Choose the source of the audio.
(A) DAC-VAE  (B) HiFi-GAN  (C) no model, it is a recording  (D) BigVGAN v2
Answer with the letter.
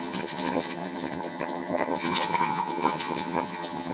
B